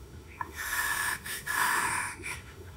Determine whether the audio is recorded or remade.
remade